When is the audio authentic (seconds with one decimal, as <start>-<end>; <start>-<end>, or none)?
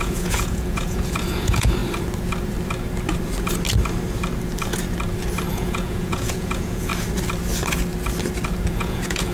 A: 1.8-5.5; 6.9-8.7